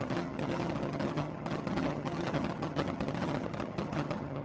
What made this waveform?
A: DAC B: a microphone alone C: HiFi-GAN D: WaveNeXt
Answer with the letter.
C